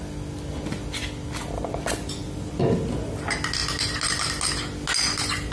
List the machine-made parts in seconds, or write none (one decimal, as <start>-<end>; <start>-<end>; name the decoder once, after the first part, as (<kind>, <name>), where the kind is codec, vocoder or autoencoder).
none